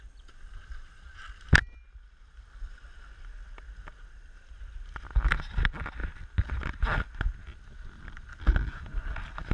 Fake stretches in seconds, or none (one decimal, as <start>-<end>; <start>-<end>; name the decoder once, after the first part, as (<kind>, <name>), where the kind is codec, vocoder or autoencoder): none